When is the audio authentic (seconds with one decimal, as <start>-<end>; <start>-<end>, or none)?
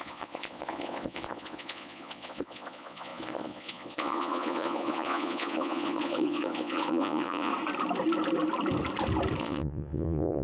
7.5-9.4